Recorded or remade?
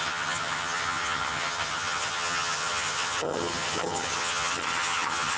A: remade